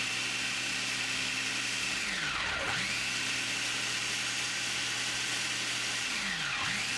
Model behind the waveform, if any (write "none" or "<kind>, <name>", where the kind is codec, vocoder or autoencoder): none